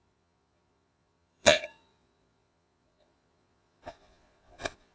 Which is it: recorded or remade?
remade